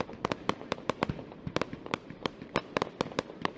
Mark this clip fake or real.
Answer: fake